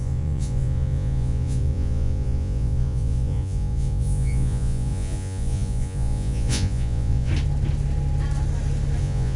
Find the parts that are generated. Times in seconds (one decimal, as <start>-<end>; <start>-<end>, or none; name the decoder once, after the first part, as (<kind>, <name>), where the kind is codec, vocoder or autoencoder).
0.0-7.3 (vocoder, Vocos); 9.0-9.4